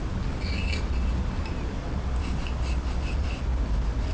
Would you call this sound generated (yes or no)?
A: no